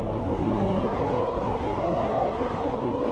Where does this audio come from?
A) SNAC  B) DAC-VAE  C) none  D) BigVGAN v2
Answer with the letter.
A